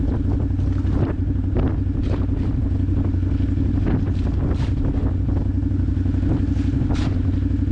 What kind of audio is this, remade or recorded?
recorded